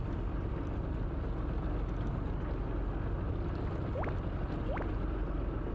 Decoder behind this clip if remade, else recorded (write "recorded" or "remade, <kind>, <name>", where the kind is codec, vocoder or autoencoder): recorded